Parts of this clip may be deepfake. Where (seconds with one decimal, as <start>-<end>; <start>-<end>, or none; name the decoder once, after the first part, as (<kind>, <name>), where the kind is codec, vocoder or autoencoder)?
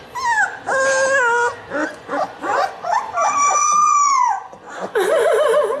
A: 1.8-5.3 (vocoder, Vocos)